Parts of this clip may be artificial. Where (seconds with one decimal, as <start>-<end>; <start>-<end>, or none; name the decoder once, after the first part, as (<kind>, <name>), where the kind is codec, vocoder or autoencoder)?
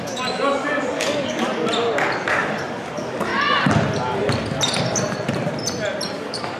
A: 0.0-1.5 (codec, DAC); 2.3-3.3; 6.1-6.6